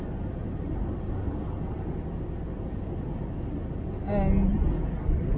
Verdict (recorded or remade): recorded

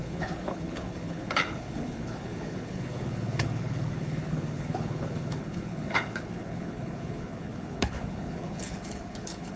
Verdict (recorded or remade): remade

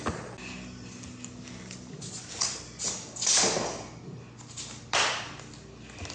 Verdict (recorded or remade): recorded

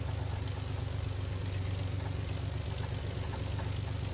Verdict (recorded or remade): recorded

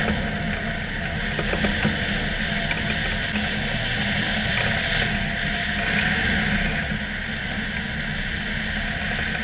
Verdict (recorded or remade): recorded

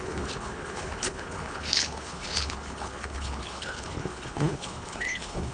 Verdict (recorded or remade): remade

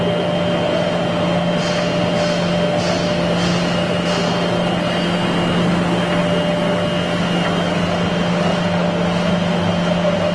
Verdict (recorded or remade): recorded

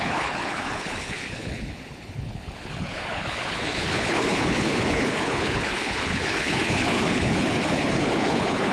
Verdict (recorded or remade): remade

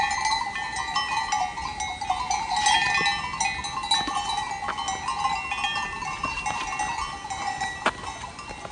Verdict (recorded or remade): recorded